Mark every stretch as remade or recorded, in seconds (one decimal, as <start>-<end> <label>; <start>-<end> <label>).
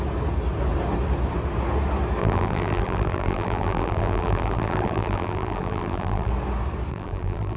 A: 0.0-2.2 recorded; 2.2-6.3 remade; 6.3-6.9 recorded; 6.9-7.6 remade